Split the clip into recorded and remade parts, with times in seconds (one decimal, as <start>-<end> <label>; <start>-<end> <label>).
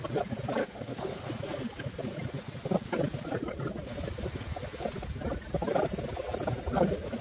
0.0-0.6 recorded; 0.6-1.3 remade; 1.3-7.2 recorded